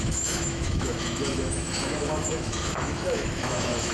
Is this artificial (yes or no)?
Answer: yes